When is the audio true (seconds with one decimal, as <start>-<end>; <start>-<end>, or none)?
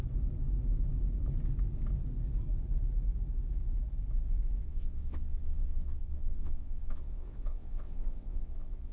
0.0-4.6